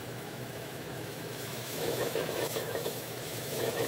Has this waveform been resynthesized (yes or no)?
yes